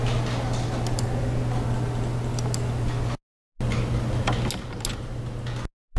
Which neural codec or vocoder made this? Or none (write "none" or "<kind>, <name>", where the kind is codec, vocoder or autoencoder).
none